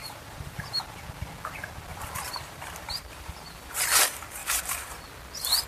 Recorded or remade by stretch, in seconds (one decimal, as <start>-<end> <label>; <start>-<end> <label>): 0.0-0.8 remade; 0.8-1.9 recorded; 1.9-3.8 remade; 3.8-4.4 recorded; 4.4-5.0 remade; 5.0-5.7 recorded